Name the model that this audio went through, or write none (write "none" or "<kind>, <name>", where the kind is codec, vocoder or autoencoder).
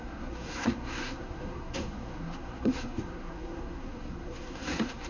codec, SNAC